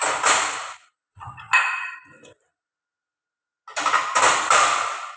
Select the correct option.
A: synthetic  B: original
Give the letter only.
B